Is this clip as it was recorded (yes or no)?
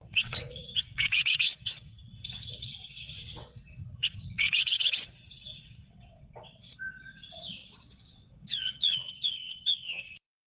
no